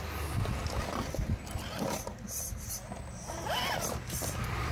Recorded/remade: recorded